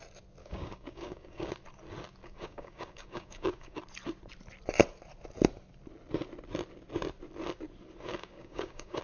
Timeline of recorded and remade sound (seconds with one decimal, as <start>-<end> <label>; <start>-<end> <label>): 0.0-0.4 recorded; 0.4-1.5 remade; 1.5-2.2 recorded; 2.2-3.8 remade; 3.8-8.1 recorded; 8.1-9.0 remade